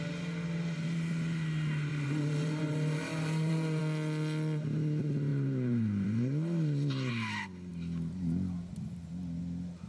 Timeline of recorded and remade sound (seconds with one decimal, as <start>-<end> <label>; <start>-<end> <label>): 0.0-1.9 recorded; 1.9-3.8 remade; 3.8-5.3 recorded; 5.3-7.1 remade; 7.1-9.9 recorded